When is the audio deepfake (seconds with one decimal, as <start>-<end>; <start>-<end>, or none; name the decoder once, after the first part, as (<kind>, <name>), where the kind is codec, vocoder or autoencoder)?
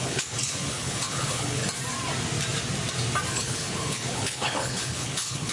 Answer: 0.0-1.6 (codec, HILCodec); 3.3-5.5